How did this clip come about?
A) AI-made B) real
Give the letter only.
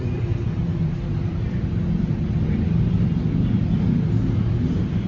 A